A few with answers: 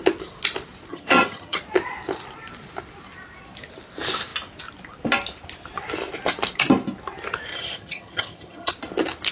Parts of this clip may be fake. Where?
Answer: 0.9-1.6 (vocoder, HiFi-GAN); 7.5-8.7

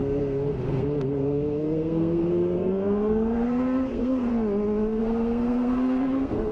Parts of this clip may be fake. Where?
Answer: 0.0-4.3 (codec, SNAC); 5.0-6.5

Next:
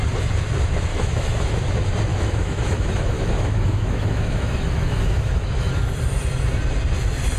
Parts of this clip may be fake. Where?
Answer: 0.9-1.5 (autoencoder, DAC-VAE); 2.1-5.7

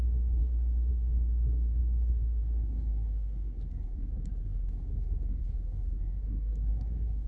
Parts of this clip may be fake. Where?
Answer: 0.0-7.3 (codec, SNAC)